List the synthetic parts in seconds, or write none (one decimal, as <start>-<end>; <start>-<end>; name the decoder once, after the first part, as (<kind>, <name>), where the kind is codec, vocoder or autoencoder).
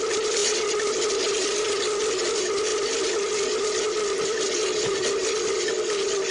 0.0-2.7 (vocoder, BigVGAN v2)